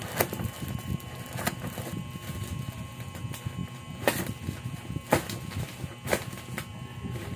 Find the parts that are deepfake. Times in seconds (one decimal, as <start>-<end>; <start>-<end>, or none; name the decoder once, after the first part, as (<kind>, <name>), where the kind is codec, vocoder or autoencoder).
none